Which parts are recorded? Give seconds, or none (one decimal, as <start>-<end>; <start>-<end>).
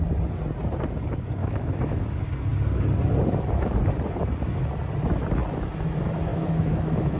0.0-1.4; 2.0-6.3